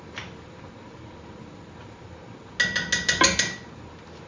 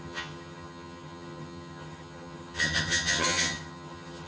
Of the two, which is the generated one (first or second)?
second